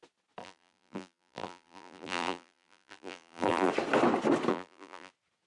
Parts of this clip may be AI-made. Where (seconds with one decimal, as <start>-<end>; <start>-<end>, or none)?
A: 0.4-3.7; 4.5-5.1